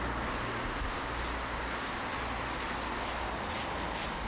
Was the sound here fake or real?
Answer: real